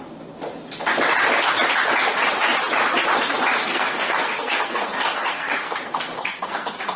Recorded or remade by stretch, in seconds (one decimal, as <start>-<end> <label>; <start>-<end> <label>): 0.0-3.6 recorded; 3.6-7.0 remade